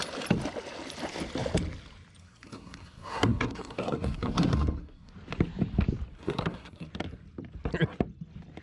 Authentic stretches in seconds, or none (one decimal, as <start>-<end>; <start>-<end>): 0.0-2.2; 5.1-6.1; 6.9-8.6